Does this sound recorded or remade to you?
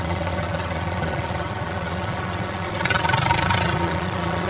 remade